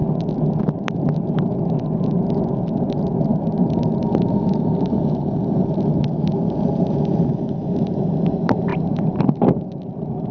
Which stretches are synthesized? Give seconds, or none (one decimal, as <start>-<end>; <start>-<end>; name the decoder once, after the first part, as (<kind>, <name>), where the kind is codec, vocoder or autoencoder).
none